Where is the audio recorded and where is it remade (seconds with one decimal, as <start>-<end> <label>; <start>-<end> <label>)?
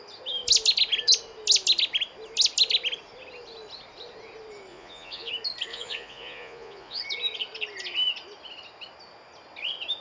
0.0-4.7 recorded; 4.7-5.3 remade; 5.3-5.7 recorded; 5.7-7.0 remade; 7.0-10.0 recorded